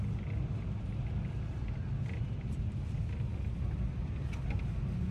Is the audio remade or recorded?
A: recorded